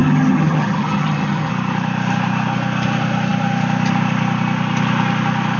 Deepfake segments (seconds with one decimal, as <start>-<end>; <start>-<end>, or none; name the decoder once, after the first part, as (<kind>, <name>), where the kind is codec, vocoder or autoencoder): 0.0-1.5 (vocoder, HiFi-GAN)